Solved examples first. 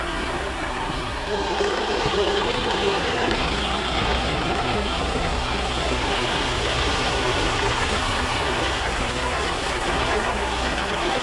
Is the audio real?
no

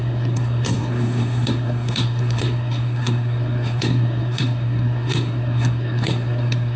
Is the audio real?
no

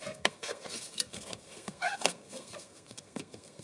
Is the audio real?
no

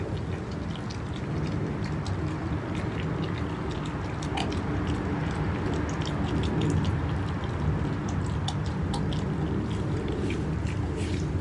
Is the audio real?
yes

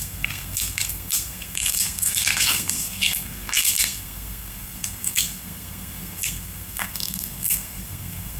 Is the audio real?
no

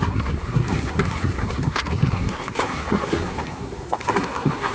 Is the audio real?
no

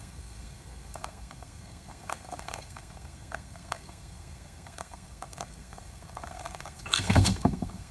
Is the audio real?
no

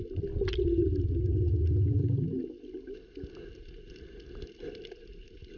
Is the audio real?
yes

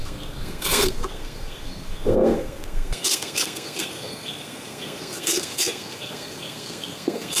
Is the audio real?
no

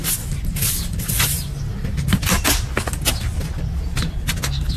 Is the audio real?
yes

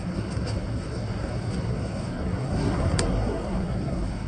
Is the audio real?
no